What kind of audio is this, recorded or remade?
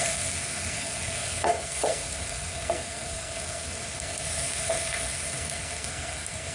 remade